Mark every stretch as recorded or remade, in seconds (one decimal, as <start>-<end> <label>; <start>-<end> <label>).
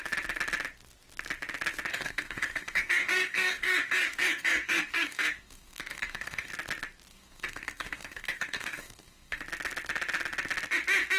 0.0-1.9 recorded; 1.9-6.5 remade; 6.5-7.1 recorded; 7.1-9.4 remade; 9.4-11.2 recorded